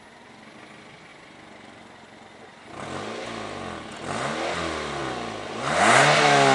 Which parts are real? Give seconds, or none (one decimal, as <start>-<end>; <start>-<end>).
0.0-6.5